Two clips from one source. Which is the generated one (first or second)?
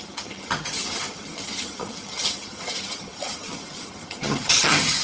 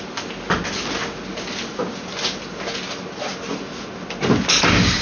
first